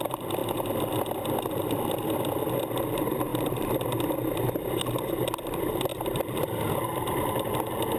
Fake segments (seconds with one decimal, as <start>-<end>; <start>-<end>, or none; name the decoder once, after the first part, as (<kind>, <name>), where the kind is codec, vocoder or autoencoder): 3.3-4.0 (vocoder, BigVGAN v2); 5.9-6.6